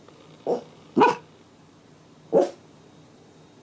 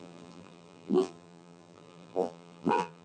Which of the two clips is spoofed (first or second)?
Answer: second